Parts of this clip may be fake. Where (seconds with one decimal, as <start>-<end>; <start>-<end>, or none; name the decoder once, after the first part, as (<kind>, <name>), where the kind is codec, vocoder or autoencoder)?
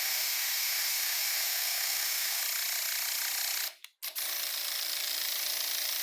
0.0-2.4 (autoencoder, DAC-VAE)